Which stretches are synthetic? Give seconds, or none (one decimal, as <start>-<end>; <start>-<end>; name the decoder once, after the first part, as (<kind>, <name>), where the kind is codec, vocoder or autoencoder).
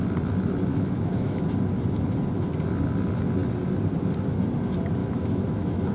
0.7-1.4 (autoencoder, DAC-VAE); 5.0-5.9